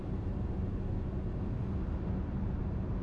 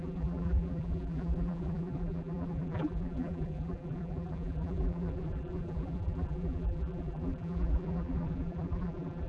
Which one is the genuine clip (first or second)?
first